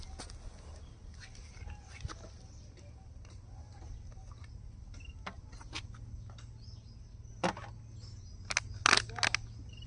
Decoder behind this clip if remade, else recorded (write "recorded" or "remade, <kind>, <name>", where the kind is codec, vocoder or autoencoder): recorded